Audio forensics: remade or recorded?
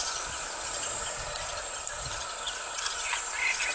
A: recorded